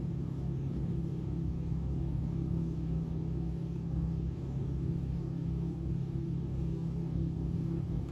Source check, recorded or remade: remade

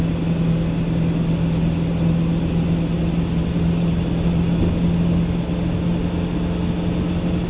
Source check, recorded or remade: recorded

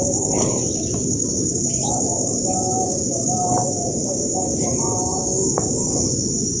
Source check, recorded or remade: remade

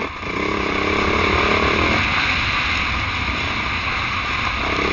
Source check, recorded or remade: recorded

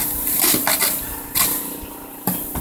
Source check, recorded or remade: recorded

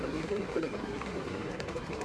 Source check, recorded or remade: remade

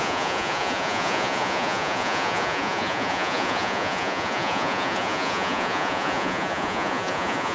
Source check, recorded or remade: remade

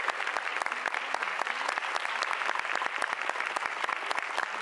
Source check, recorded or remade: recorded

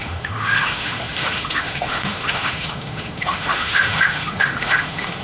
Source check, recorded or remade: remade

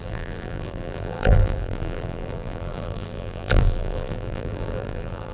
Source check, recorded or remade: remade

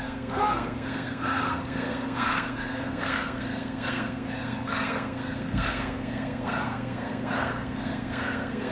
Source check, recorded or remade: remade